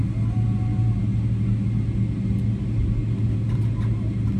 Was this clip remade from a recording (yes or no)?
no